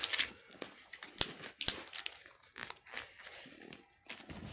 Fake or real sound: real